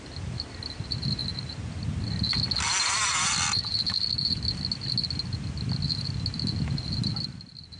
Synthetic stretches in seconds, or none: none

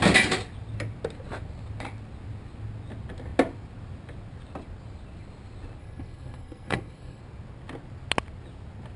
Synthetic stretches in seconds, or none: 5.8-7.2 (codec, SNAC)